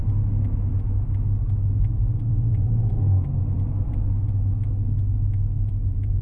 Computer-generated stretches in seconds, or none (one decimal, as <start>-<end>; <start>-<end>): 3.7-6.2